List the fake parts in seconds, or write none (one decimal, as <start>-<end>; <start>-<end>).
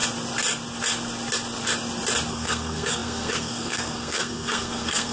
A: 2.3-5.1